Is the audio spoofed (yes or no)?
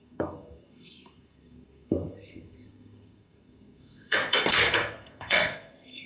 yes